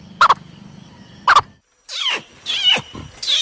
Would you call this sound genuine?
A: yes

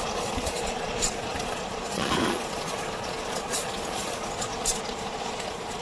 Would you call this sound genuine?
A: no